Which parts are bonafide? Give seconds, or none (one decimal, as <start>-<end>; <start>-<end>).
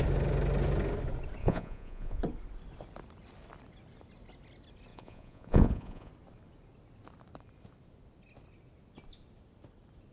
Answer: 0.0-1.4; 2.2-4.9; 6.1-10.1